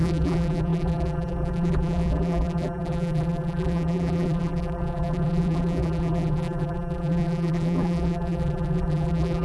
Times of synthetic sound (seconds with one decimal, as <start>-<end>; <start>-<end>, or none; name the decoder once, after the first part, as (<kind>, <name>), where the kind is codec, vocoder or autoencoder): 0.0-9.4 (vocoder, BigVGAN v2)